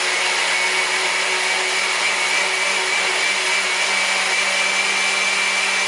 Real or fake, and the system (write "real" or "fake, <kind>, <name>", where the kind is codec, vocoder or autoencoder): real